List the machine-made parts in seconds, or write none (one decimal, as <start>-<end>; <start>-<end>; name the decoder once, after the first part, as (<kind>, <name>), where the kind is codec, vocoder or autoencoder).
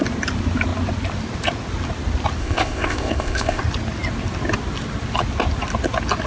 2.4-3.6 (codec, ZipCodec)